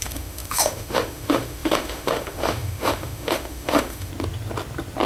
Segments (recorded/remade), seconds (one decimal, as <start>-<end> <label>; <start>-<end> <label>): 0.0-4.1 remade; 4.1-5.1 recorded

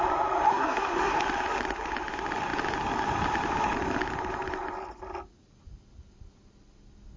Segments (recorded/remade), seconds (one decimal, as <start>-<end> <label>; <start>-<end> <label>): 0.0-0.5 recorded; 0.5-1.2 remade; 1.2-7.2 recorded